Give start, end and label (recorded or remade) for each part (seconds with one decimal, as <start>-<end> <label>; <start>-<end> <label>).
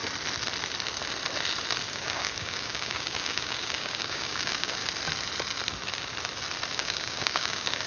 0.0-1.9 recorded; 1.9-4.8 remade; 4.8-6.7 recorded; 6.7-7.9 remade